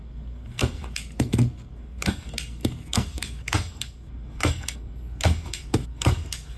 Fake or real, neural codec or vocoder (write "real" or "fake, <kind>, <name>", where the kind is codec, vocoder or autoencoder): fake, codec, SNAC